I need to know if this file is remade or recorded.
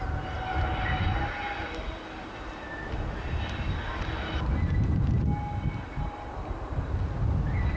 recorded